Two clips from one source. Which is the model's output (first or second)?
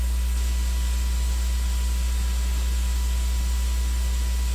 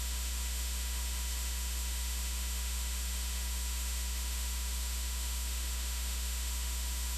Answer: second